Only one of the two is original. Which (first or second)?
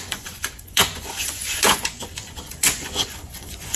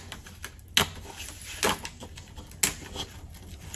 second